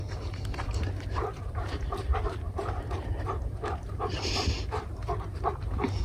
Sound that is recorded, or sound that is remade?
remade